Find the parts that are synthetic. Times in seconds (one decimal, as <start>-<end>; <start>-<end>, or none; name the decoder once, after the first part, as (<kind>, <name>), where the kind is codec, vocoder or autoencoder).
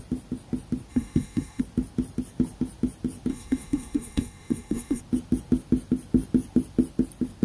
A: 0.9-1.6 (codec, SNAC); 3.3-5.0